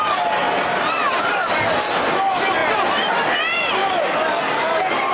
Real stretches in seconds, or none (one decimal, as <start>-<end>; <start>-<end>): 2.6-3.3